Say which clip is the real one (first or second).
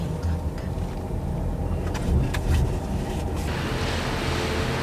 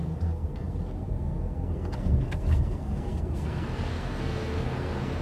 first